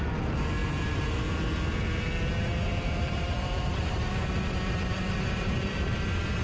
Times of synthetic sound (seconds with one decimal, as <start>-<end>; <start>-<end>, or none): 2.7-5.9